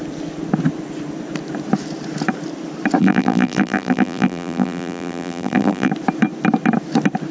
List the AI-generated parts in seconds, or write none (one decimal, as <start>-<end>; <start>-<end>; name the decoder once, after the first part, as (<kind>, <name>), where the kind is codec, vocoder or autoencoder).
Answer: 3.0-5.9 (vocoder, BigVGAN v2)

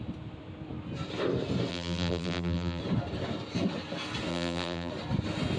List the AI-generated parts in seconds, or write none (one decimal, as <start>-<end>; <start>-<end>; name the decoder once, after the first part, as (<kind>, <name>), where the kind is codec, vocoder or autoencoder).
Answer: 1.7-2.8 (vocoder, BigVGAN v2); 4.3-4.9

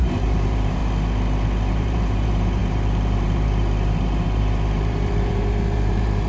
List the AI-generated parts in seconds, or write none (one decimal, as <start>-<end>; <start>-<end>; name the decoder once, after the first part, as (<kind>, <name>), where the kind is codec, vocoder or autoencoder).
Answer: 0.0-0.8 (vocoder, BigVGAN v2); 1.7-6.3

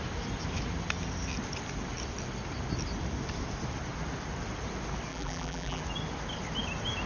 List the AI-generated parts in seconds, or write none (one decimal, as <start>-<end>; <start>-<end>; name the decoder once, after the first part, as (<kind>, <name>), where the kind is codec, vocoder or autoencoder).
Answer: 5.1-5.8 (vocoder, BigVGAN v2)

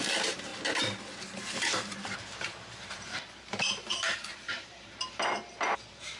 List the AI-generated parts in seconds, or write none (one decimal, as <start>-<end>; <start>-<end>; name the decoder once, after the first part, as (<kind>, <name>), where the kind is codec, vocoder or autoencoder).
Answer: 0.0-0.5 (vocoder, BigVGAN v2); 1.4-6.2

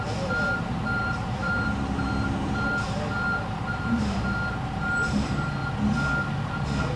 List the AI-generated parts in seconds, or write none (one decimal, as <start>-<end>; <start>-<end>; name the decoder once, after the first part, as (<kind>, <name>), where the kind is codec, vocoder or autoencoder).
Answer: 0.0-5.6 (vocoder, BigVGAN v2)